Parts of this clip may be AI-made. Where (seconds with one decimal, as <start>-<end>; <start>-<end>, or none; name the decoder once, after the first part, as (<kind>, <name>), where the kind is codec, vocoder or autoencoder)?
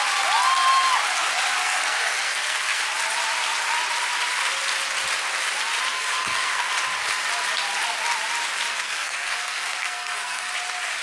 1.6-2.8 (codec, SNAC); 5.9-6.7; 8.7-10.5